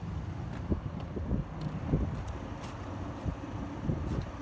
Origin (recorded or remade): recorded